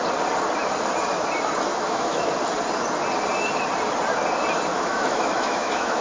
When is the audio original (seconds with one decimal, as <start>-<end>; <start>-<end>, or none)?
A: 0.0-1.7; 2.3-4.7